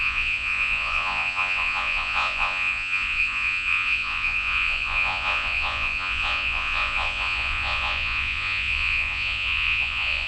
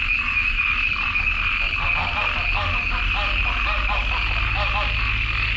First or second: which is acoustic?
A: second